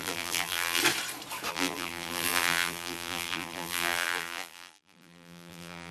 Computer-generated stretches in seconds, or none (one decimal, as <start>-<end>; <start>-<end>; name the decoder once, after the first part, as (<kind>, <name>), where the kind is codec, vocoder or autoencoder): 0.0-0.8 (vocoder, BigVGAN v2); 1.5-5.9